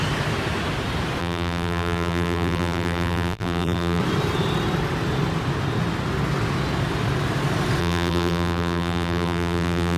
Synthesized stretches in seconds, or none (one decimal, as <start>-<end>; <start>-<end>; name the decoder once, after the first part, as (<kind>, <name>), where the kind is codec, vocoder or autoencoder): 1.2-4.0 (vocoder, BigVGAN v2); 7.8-10.0